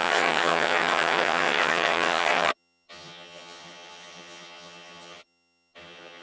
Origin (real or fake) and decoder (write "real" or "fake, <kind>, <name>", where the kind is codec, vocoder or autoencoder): fake, vocoder, HiFi-GAN